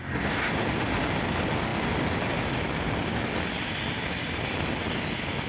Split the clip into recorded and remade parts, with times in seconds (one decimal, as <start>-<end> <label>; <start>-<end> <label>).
0.0-5.5 recorded